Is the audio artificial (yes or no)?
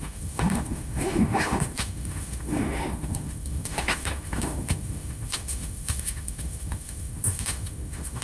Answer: yes